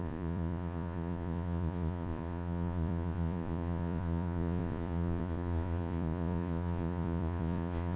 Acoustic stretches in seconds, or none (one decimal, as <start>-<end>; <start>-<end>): none